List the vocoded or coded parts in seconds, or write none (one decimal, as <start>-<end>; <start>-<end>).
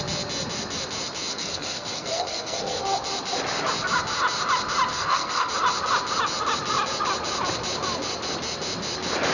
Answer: 1.3-2.8; 4.9-5.5